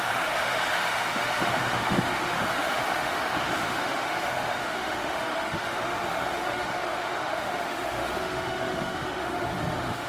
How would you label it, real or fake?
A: fake